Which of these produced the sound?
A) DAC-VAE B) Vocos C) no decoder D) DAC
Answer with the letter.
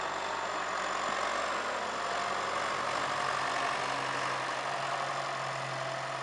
C